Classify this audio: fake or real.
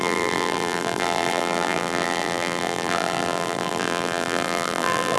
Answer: fake